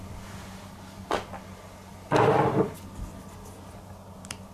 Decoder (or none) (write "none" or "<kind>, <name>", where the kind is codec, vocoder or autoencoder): none